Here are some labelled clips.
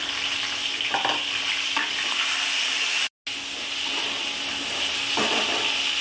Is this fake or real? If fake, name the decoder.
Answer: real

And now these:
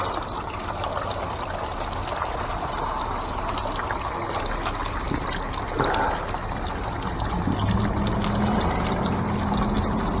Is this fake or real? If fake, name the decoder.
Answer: real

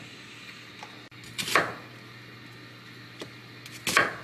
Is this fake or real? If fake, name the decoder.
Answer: real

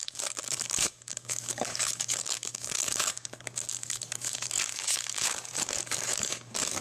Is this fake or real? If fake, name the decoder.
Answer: fake, codec, DAC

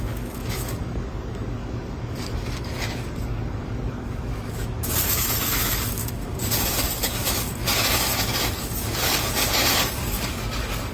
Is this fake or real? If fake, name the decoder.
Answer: fake, codec, DAC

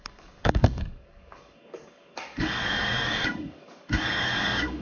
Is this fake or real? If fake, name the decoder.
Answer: fake, codec, DAC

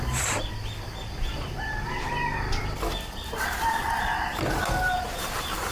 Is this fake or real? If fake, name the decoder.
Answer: real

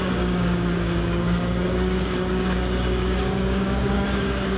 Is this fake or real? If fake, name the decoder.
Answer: fake, codec, DAC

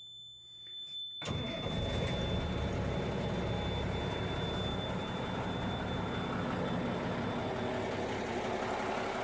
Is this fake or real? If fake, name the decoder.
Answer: real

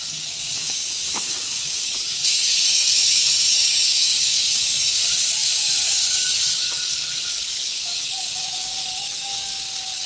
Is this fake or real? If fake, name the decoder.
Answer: fake, codec, DAC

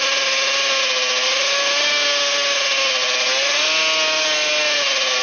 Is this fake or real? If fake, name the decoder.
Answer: real